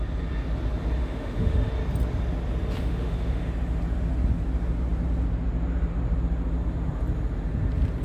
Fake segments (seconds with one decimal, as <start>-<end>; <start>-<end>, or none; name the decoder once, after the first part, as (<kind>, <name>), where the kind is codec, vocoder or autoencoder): 1.0-1.7 (autoencoder, DAC-VAE); 2.8-3.5